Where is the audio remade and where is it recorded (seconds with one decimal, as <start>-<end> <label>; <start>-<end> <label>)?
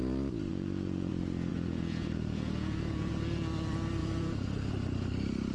0.0-0.5 recorded; 0.5-1.1 remade; 1.1-1.5 recorded; 1.5-3.1 remade; 3.1-4.0 recorded; 4.0-4.7 remade; 4.7-5.5 recorded